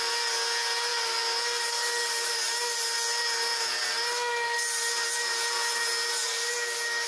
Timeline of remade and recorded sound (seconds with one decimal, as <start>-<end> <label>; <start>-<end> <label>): 0.0-7.1 recorded